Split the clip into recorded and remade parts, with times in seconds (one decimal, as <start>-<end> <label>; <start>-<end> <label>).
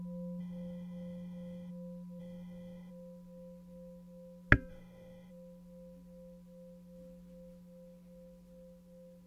0.0-0.4 recorded; 0.4-1.7 remade; 1.7-2.2 recorded; 2.2-2.9 remade; 2.9-4.7 recorded; 4.7-5.3 remade; 5.3-9.3 recorded